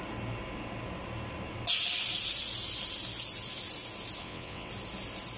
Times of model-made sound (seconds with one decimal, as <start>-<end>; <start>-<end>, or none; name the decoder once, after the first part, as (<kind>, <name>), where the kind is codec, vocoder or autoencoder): 4.2-4.7 (vocoder, WaveNeXt)